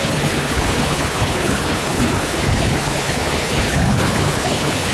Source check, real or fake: fake